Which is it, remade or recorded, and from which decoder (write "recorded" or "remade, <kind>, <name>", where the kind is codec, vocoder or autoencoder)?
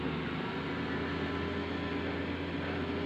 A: recorded